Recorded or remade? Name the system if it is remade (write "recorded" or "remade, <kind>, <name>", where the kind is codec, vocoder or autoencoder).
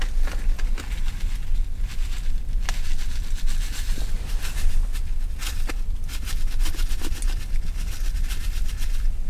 recorded